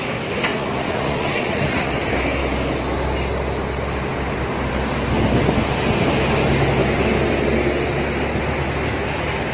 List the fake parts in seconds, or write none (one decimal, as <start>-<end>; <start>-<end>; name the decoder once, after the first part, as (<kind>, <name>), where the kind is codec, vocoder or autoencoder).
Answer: 0.5-1.9 (vocoder, Vocos)

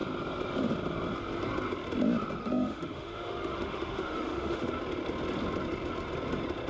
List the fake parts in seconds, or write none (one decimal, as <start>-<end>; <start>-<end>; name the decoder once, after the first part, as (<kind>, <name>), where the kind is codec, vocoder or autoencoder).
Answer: 2.4-4.8 (autoencoder, DAC-VAE)

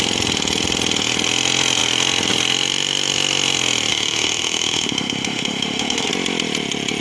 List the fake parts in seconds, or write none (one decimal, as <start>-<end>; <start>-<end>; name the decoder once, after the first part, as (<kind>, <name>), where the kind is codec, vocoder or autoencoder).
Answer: 3.9-6.1 (autoencoder, DAC-VAE)

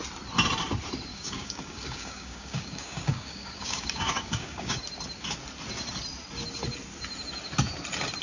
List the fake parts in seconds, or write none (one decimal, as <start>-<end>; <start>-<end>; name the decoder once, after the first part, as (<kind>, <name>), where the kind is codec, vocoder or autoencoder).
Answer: 1.1-4.8 (codec, DAC)

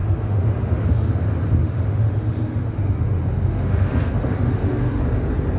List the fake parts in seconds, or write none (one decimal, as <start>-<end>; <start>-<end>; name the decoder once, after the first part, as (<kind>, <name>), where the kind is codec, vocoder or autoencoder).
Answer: 0.0-1.1 (autoencoder, DAC-VAE); 1.6-5.0

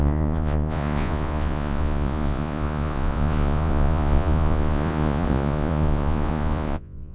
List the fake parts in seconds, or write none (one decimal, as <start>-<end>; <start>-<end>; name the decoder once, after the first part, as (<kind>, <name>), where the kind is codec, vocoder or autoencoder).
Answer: 0.0-7.1 (vocoder, Vocos)

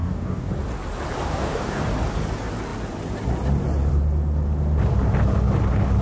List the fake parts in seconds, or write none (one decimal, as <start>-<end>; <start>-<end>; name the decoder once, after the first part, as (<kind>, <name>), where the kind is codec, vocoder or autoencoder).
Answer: 0.0-0.5 (codec, DAC); 1.3-1.8